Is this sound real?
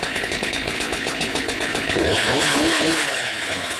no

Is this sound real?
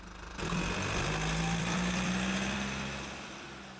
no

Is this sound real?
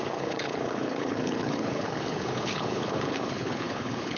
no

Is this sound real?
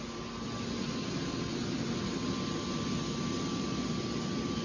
yes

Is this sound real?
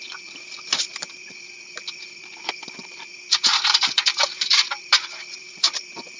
no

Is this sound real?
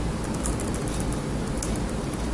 yes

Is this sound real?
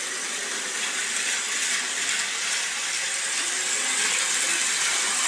yes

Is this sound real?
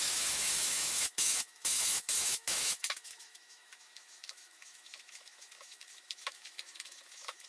no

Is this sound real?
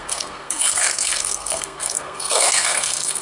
no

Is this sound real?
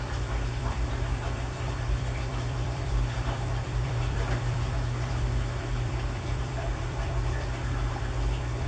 no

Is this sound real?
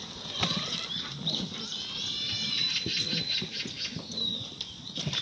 no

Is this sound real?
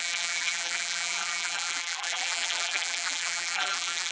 no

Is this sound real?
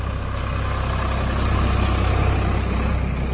yes